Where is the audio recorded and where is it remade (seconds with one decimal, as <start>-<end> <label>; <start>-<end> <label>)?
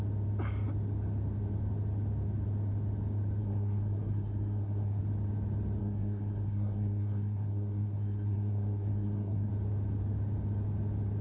0.0-3.4 recorded; 3.4-5.0 remade; 5.0-5.8 recorded; 5.8-9.5 remade; 9.5-11.2 recorded